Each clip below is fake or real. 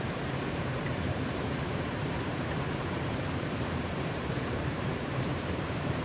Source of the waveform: fake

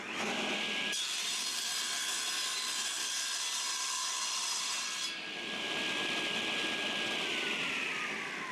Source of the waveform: fake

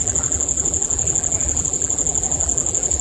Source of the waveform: fake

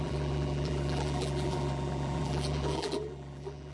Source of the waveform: fake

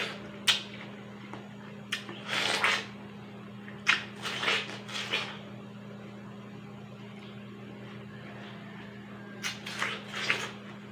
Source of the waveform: real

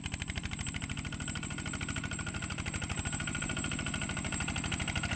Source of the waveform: fake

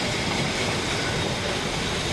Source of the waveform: real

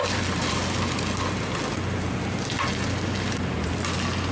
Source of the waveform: real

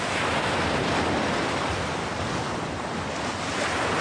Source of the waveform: fake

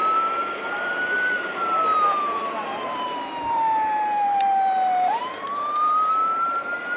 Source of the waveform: fake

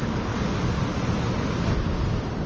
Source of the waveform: real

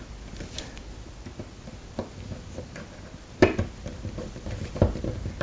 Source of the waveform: fake